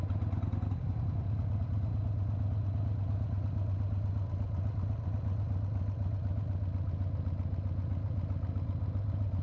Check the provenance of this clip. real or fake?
real